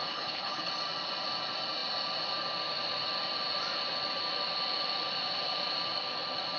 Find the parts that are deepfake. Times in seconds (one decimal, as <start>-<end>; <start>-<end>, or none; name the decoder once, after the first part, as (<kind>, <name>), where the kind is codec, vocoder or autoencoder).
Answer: 0.0-0.7 (codec, HILCodec)